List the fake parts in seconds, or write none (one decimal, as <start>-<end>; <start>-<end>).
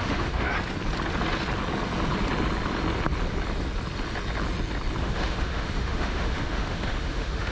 0.0-0.5; 5.0-7.5